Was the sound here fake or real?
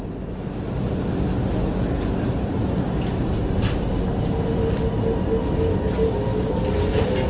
real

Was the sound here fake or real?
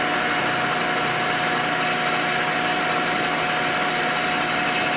real